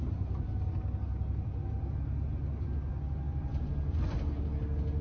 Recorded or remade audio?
recorded